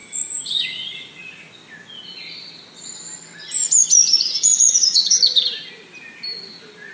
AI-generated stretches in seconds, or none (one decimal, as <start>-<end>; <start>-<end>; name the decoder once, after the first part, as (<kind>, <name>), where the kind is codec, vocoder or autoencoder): 0.0-1.5 (vocoder, Vocos); 4.0-5.2